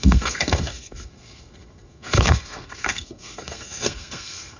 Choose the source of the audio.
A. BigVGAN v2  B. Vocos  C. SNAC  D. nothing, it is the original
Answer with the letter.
C